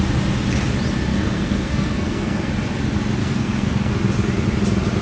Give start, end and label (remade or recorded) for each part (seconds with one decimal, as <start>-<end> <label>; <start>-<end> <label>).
0.0-1.1 recorded; 1.1-2.5 remade; 2.5-3.2 recorded; 3.2-3.9 remade; 3.9-5.0 recorded